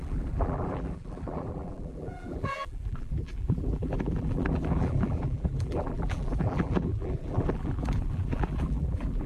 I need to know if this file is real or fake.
fake